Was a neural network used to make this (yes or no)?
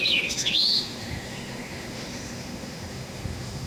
yes